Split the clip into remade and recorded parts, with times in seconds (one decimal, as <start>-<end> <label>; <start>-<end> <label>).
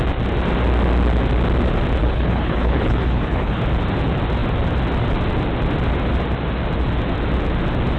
0.0-2.0 recorded; 2.0-3.6 remade; 3.6-8.0 recorded